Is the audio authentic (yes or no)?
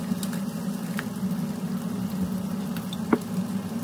yes